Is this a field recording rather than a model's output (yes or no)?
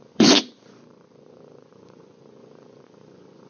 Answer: no